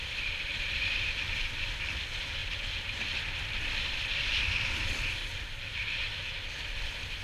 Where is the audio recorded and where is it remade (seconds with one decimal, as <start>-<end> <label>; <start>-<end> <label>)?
0.0-2.4 remade; 2.4-3.1 recorded; 3.1-7.2 remade